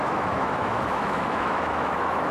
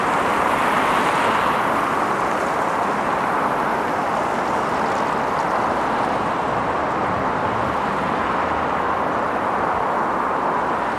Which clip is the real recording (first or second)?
second